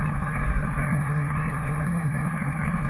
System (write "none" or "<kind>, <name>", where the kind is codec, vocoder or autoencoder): codec, SNAC